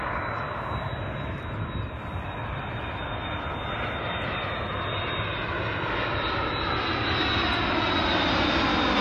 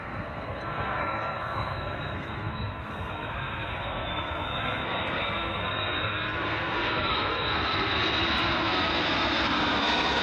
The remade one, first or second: second